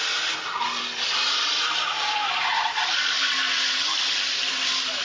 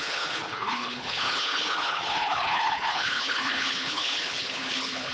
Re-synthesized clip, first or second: second